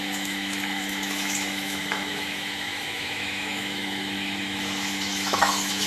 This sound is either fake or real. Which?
fake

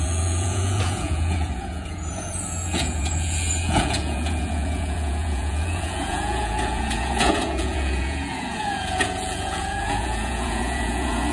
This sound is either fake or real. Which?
fake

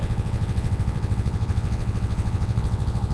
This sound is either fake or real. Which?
fake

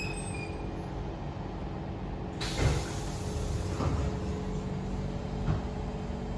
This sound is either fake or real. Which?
real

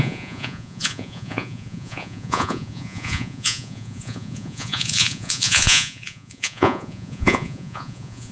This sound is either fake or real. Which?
fake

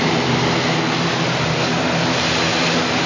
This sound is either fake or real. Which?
real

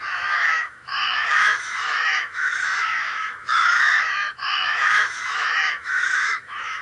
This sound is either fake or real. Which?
fake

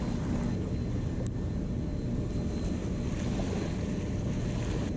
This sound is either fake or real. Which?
real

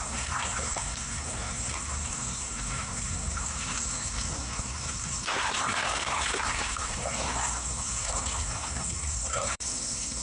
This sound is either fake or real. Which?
fake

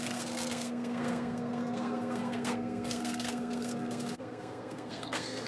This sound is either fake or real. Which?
fake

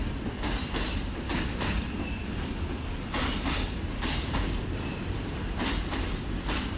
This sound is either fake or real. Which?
real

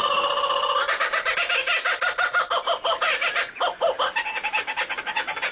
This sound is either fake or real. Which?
real